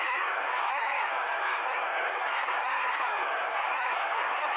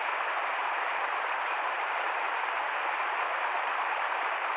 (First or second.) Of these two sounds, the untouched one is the second